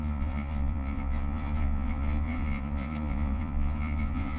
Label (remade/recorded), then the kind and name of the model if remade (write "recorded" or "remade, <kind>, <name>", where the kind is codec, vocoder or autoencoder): remade, vocoder, Vocos